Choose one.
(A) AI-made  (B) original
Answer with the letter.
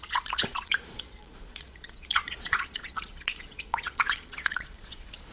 A